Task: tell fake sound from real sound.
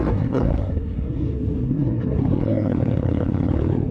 fake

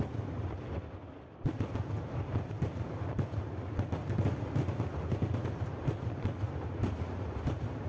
real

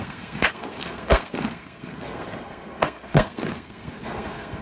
fake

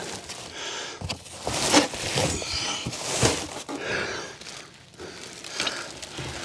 real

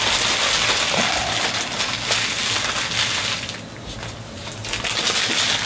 real